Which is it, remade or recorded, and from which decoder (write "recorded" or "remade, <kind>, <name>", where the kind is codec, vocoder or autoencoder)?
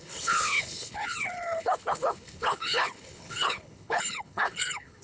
remade, codec, HILCodec